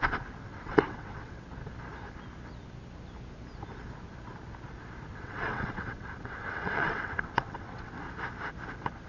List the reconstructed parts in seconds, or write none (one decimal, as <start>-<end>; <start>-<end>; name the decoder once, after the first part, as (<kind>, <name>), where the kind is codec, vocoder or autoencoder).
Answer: 0.4-1.4 (vocoder, WaveNeXt); 5.1-7.9